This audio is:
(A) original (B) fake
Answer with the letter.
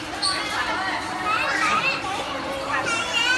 A